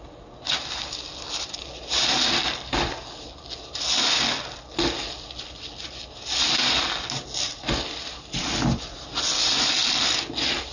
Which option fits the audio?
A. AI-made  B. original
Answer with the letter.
B